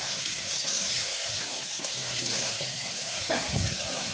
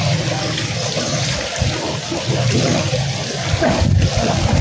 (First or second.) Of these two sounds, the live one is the second